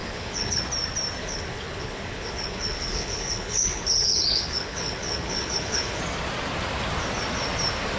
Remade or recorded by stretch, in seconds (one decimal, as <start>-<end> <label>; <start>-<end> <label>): 0.0-0.6 remade; 0.6-1.2 recorded; 1.2-6.0 remade; 6.0-8.0 recorded